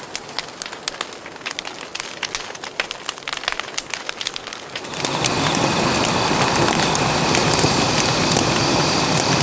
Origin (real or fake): real